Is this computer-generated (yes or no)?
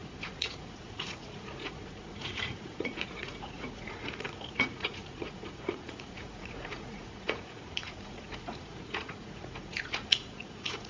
yes